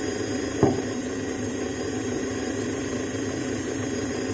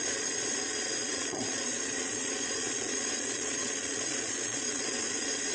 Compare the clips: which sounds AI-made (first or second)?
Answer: second